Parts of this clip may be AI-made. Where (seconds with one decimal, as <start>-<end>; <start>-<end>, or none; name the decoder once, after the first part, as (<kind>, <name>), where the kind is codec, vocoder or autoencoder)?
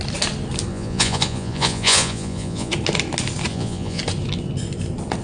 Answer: 0.7-2.7 (vocoder, Vocos); 3.5-4.0